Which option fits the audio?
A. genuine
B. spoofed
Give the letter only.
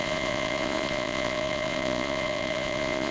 B